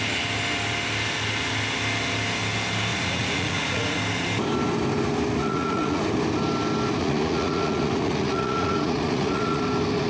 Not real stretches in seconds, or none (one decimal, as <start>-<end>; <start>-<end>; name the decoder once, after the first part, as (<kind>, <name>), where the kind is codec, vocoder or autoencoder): 2.9-4.0 (vocoder, Vocos); 5.4-6.0; 7.0-9.6